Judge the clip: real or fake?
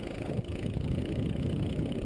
fake